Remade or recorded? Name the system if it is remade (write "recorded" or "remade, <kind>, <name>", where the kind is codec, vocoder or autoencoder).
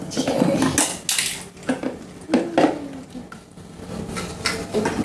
recorded